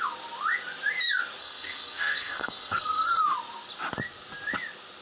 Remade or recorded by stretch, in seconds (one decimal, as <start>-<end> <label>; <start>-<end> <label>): 0.0-1.4 recorded; 1.4-3.2 remade; 3.2-5.0 recorded

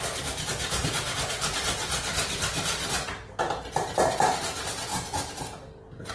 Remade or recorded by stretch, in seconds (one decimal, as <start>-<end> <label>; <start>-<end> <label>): 0.0-6.1 recorded

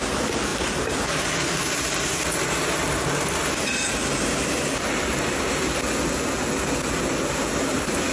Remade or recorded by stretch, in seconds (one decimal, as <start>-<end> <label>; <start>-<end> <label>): 0.0-8.1 recorded

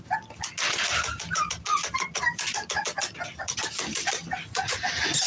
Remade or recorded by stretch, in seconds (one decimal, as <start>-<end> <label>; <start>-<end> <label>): 0.0-5.3 recorded

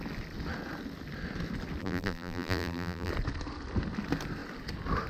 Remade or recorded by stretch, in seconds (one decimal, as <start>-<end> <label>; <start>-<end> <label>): 0.0-1.8 recorded; 1.8-3.1 remade; 3.1-5.1 recorded

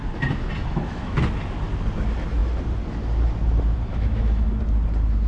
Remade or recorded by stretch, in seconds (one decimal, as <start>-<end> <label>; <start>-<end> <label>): 0.0-0.6 recorded; 0.6-1.2 remade; 1.2-3.9 recorded; 3.9-4.6 remade; 4.6-5.3 recorded

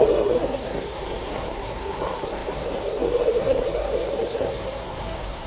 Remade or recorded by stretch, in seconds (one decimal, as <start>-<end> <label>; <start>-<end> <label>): 0.0-5.5 remade